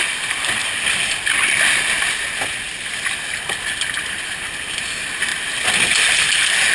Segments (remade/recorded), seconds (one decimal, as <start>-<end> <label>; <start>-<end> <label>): 0.0-6.7 recorded